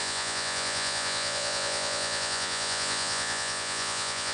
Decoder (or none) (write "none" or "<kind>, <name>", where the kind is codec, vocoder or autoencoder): vocoder, Vocos